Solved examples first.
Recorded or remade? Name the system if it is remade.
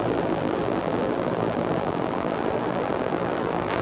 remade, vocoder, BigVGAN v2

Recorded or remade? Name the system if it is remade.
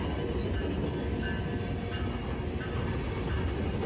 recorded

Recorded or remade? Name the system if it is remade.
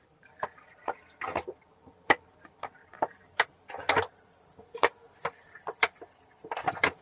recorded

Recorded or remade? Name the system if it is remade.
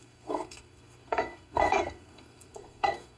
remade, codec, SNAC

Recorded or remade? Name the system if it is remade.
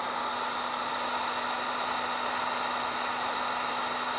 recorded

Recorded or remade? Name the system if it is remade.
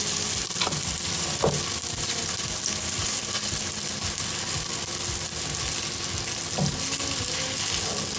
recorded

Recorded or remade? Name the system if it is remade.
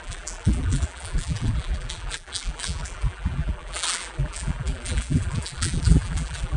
remade, vocoder, BigVGAN v2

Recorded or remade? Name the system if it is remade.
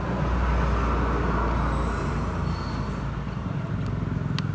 recorded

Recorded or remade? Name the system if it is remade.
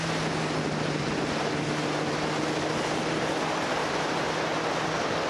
recorded